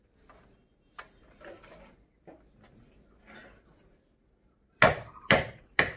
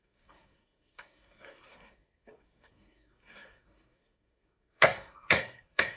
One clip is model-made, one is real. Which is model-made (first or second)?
second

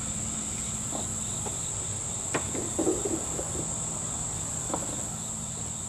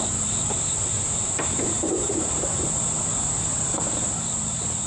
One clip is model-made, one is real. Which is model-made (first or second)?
second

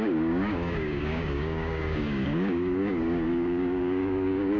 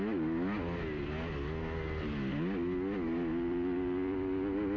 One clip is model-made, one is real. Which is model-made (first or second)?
first